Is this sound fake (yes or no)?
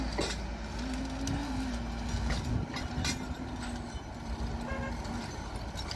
no